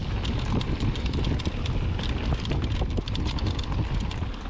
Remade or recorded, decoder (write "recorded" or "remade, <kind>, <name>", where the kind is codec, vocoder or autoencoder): recorded